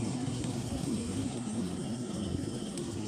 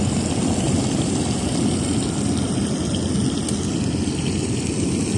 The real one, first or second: second